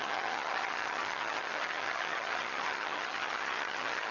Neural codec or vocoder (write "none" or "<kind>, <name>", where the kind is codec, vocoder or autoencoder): vocoder, HiFi-GAN